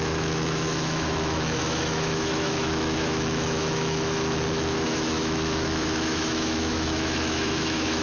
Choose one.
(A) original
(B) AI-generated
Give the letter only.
B